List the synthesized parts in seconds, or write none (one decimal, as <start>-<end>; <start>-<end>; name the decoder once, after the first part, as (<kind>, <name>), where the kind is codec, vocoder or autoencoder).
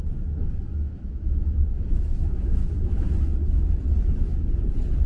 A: 0.7-3.1 (autoencoder, DAC-VAE)